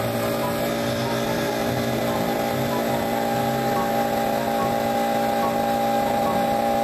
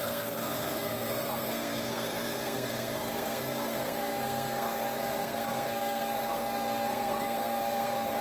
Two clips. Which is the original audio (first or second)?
first